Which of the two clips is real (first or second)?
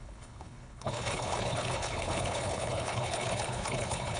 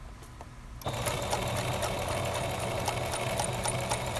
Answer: second